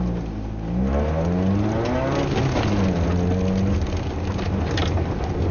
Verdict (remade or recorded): recorded